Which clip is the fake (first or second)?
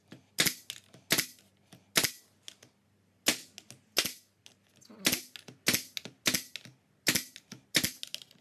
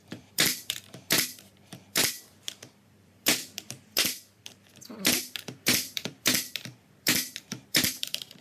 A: second